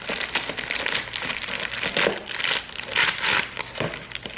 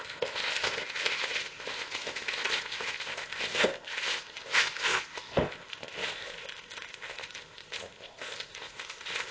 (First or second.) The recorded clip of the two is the first